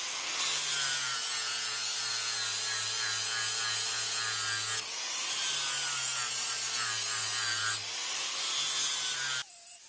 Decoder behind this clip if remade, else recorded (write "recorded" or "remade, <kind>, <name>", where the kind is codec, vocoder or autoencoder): recorded